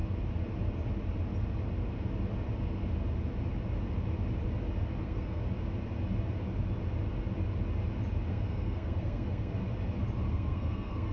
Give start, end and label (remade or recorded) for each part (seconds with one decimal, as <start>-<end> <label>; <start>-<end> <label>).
0.0-5.0 recorded; 5.0-5.4 remade; 5.4-8.3 recorded; 8.3-9.6 remade; 9.6-10.3 recorded; 10.3-11.1 remade